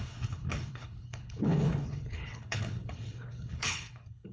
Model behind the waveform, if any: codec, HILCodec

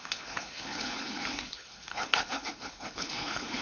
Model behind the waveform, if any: codec, HILCodec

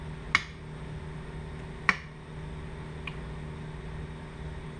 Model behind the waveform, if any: none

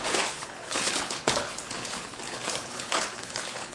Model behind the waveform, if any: codec, HILCodec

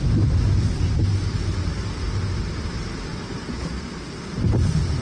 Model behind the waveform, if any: none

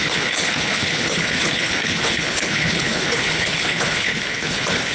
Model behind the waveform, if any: codec, HILCodec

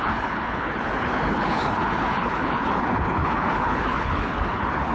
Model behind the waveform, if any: codec, HILCodec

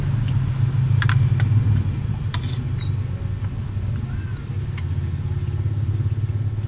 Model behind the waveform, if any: none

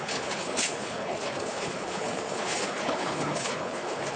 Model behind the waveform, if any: codec, HILCodec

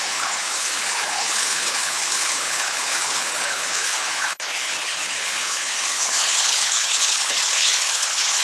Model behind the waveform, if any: codec, HILCodec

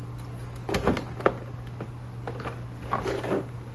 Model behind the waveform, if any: none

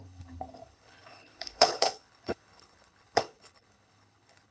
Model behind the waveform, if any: codec, HILCodec